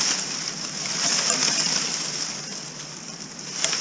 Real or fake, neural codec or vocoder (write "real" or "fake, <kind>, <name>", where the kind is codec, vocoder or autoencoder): real